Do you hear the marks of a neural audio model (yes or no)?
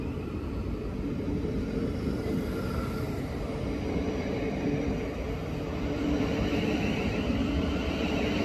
no